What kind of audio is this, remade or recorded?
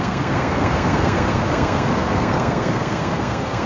remade